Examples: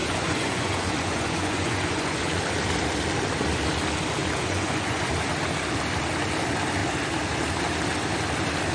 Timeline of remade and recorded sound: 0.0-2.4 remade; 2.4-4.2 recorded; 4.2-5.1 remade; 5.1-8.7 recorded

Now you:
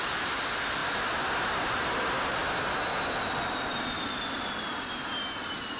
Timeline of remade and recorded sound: 0.0-5.8 recorded

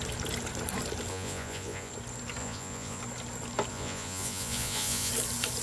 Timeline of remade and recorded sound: 0.0-1.1 recorded; 1.1-1.9 remade; 1.9-2.4 recorded; 2.4-3.0 remade; 3.0-3.7 recorded; 3.7-5.1 remade; 5.1-5.6 recorded